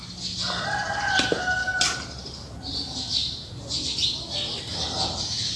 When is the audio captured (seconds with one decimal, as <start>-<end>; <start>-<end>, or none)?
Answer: 0.0-1.6; 3.5-4.7